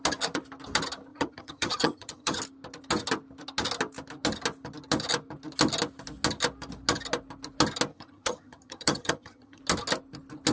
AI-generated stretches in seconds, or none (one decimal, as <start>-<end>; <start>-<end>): 1.1-2.4; 7.9-9.6